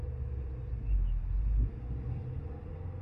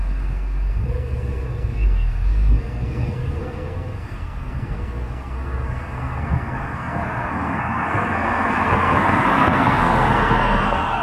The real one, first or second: first